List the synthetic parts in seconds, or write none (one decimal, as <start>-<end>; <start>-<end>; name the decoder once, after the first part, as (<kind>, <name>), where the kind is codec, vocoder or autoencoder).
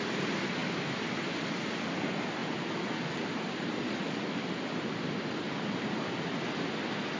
none